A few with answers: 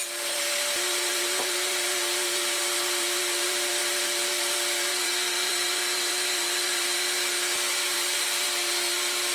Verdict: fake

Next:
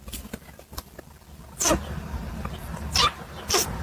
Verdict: real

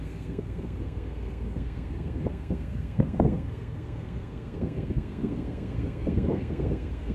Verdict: fake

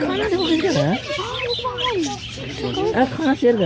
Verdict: real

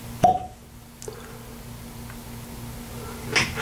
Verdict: real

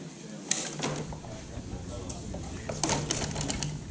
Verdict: real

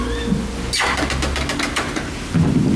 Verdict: real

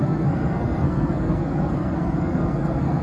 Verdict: fake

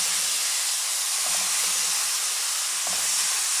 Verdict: real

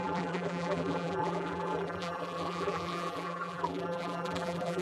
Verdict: fake